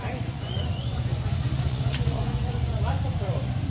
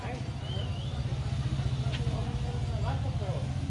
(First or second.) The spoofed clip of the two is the first